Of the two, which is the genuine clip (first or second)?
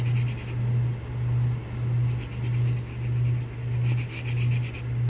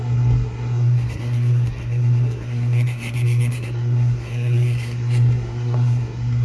first